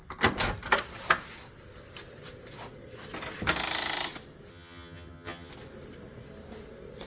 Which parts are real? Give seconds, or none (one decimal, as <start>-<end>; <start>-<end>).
0.0-4.5; 5.5-7.1